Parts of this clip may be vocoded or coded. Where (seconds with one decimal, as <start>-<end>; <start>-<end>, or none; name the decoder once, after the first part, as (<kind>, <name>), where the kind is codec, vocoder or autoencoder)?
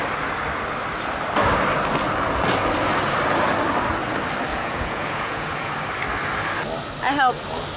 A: 4.5-5.7 (vocoder, Vocos)